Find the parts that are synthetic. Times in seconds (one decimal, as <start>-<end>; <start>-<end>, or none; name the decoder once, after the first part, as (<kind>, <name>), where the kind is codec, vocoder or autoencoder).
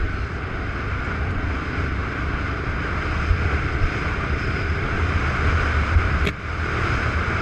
none